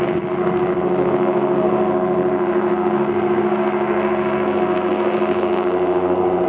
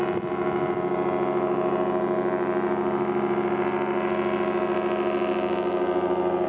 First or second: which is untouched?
second